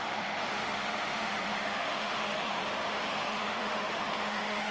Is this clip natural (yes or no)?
no